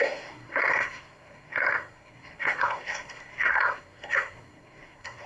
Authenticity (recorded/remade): remade